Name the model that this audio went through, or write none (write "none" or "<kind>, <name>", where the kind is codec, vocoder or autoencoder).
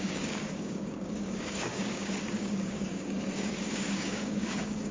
codec, DAC